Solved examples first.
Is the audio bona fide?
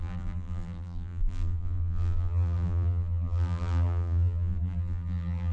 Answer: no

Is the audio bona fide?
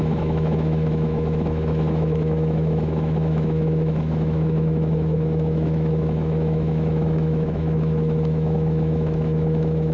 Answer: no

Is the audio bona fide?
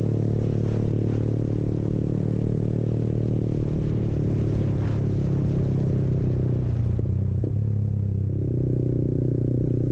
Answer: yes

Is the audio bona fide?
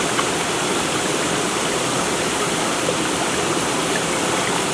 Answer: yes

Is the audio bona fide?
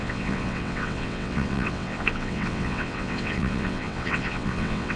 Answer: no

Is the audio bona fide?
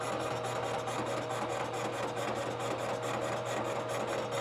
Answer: yes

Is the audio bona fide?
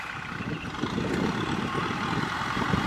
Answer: yes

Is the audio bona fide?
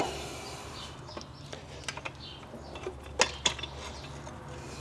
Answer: yes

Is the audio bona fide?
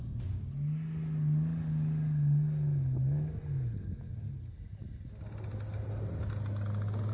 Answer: yes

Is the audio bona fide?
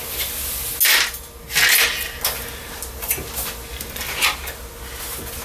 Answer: yes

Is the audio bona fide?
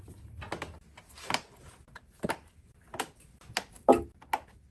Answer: yes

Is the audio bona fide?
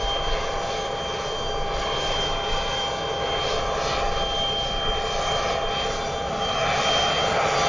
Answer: yes